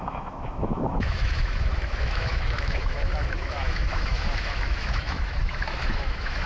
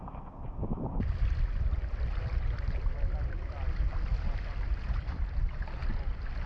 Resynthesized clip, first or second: first